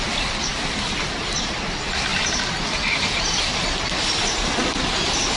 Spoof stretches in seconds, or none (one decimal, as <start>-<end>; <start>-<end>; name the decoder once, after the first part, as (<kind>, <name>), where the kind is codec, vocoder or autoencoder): 0.0-5.4 (vocoder, BigVGAN v2)

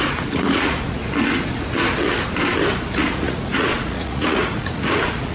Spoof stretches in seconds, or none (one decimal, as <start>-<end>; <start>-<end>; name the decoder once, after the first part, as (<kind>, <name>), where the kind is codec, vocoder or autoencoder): 0.0-1.0 (vocoder, Vocos); 2.9-5.3

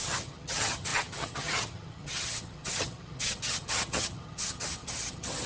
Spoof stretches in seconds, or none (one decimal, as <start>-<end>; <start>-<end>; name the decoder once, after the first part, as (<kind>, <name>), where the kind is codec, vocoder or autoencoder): 0.0-5.5 (vocoder, HiFi-GAN)

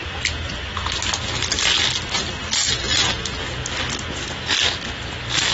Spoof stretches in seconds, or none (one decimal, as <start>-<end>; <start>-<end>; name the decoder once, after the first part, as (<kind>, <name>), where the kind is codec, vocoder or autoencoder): none

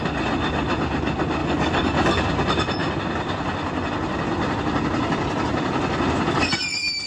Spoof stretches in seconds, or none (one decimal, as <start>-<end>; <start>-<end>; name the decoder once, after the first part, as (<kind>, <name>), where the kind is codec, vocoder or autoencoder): 1.4-2.2 (codec, DAC)